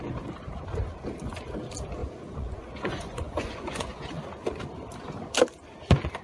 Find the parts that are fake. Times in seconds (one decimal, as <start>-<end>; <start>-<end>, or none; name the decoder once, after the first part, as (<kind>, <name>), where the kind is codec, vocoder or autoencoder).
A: 2.0-4.2 (vocoder, Vocos)